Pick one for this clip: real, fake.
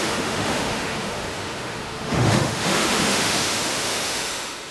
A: fake